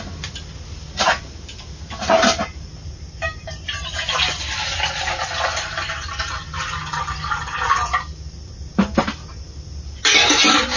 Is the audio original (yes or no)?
yes